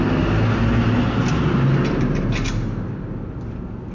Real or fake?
real